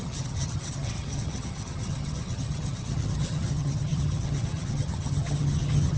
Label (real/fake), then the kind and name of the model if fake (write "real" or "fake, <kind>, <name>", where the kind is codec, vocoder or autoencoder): fake, vocoder, HiFi-GAN